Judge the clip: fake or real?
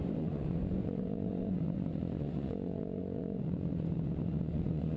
fake